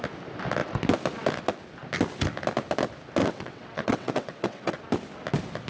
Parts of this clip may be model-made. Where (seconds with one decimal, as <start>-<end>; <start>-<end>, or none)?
3.2-4.8